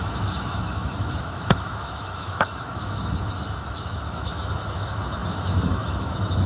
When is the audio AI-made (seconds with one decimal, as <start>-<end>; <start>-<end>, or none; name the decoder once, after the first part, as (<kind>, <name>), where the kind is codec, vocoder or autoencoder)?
0.0-6.5 (autoencoder, DAC-VAE)